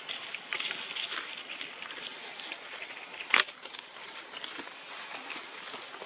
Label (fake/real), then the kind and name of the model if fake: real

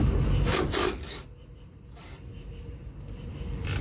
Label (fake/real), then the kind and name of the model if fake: real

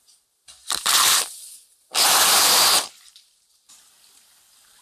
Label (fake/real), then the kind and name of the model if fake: fake, vocoder, BigVGAN v2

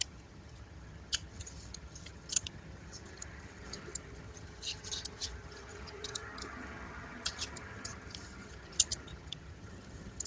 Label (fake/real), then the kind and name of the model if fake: fake, vocoder, HiFi-GAN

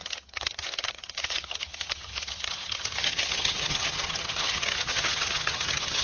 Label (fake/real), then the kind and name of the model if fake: fake, vocoder, HiFi-GAN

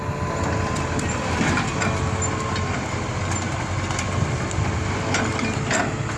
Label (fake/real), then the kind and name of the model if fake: real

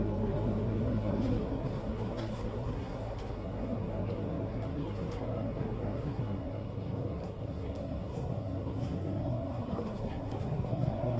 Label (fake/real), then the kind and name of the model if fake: fake, codec, SNAC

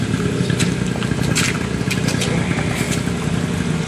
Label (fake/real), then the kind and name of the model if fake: real